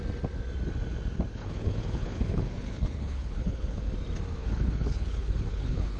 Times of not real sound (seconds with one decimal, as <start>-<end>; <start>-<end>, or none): 1.3-3.9; 4.4-6.0